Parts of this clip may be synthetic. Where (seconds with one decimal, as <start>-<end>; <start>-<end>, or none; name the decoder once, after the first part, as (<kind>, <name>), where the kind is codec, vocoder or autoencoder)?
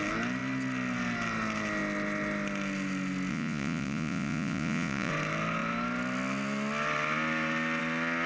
3.3-5.1 (vocoder, Vocos)